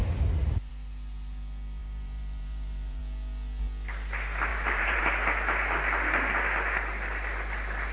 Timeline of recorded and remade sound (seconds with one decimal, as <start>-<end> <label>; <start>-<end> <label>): 0.0-1.8 recorded; 1.8-3.0 remade; 3.0-4.5 recorded; 4.5-5.0 remade; 5.0-7.9 recorded